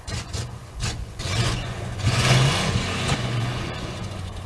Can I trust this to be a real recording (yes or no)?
no